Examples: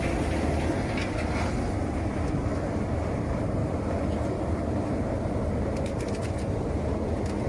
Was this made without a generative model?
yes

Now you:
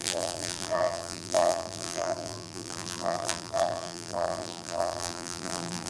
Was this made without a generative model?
no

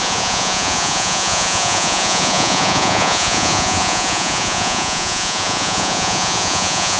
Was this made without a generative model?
no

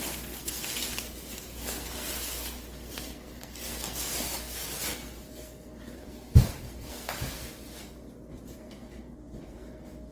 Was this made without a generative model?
no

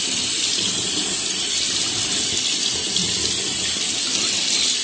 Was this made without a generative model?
yes